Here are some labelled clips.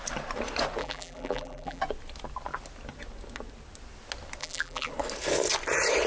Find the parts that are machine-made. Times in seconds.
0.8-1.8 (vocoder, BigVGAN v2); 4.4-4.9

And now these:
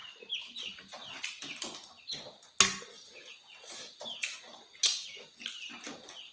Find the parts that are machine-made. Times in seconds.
3.5-4.6 (vocoder, BigVGAN v2)